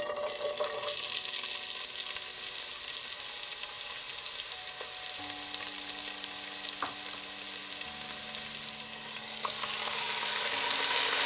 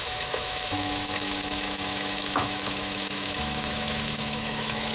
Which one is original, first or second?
first